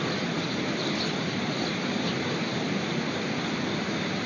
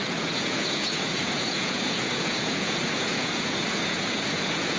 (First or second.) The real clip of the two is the first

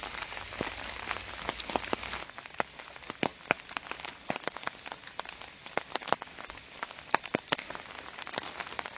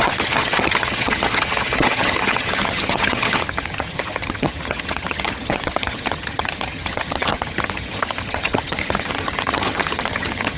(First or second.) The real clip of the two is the first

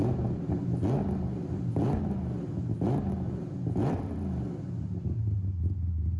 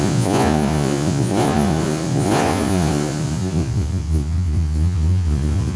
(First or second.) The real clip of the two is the first